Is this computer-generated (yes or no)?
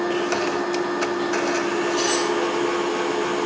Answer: no